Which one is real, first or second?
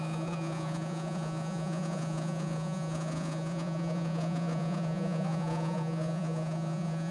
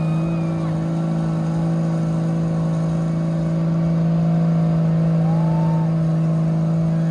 second